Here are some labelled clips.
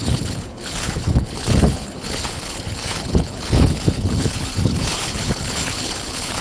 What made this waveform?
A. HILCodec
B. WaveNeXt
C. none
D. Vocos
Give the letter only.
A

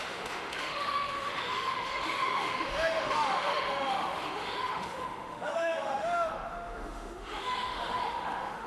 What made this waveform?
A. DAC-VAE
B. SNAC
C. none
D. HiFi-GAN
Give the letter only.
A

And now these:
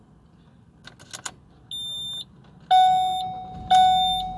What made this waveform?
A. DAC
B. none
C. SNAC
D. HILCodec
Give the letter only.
B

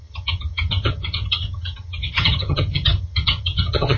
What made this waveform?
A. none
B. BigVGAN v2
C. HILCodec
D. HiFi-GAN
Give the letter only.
D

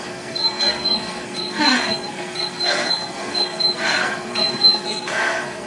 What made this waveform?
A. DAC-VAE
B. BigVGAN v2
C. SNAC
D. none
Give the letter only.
C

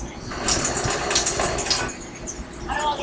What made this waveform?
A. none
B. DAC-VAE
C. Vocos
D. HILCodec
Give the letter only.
A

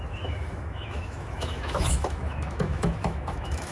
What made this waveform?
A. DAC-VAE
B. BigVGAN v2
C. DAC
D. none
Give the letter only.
A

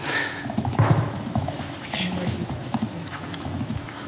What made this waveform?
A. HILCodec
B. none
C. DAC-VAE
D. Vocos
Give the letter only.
C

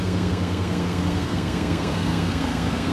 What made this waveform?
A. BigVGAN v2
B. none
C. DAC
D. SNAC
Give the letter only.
D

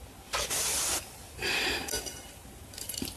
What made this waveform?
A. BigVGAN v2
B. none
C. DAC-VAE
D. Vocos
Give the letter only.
B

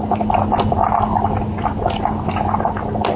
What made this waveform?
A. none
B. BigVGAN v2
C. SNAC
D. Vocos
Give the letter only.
A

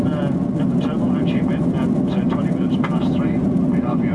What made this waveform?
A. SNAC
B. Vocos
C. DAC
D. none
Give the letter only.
D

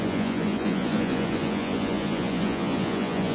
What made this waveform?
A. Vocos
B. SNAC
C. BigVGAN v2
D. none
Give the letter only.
A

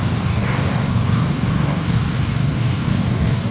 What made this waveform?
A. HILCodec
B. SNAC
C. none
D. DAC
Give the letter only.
D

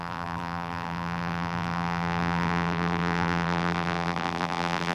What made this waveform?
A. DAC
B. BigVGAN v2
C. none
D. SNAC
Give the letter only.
B